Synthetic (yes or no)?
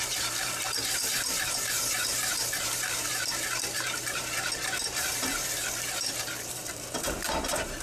yes